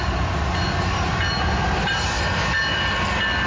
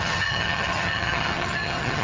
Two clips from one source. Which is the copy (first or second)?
second